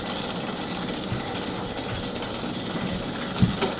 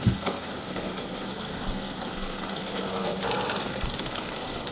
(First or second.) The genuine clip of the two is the first